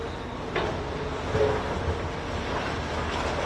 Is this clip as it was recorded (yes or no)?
yes